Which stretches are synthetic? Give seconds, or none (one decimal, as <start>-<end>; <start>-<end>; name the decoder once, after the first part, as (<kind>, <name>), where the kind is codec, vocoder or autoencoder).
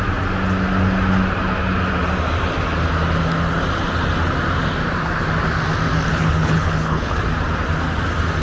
6.1-7.2 (codec, HILCodec)